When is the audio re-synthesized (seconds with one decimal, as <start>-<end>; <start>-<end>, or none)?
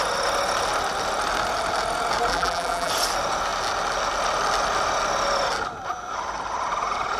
2.3-2.9